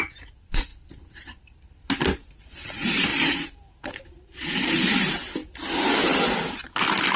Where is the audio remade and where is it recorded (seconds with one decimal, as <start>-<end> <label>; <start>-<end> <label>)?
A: 0.0-0.7 remade; 0.7-2.4 recorded; 2.4-5.4 remade; 5.4-7.2 recorded